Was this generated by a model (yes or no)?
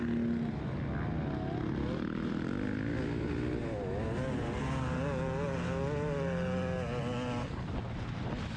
no